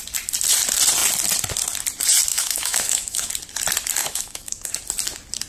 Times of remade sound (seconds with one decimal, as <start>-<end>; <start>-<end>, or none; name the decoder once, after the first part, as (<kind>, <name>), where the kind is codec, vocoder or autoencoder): 2.3-3.3 (autoencoder, DAC-VAE); 4.0-4.7